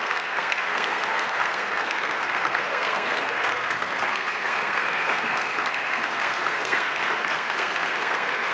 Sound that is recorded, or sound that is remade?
remade